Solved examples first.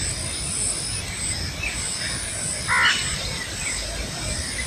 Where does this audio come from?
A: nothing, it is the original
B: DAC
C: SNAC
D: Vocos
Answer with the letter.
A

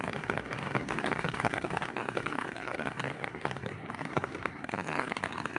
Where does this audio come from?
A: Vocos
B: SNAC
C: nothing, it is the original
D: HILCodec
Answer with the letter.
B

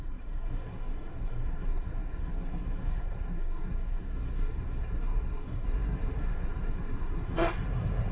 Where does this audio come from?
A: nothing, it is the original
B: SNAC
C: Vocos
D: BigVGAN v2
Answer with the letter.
B